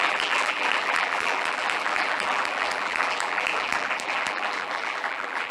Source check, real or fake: fake